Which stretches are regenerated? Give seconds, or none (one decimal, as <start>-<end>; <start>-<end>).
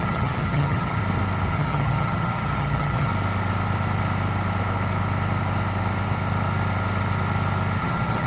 0.0-1.0; 1.5-3.1; 7.8-8.3